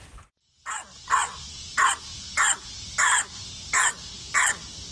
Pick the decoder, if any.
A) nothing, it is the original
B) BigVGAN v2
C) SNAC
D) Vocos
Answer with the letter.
A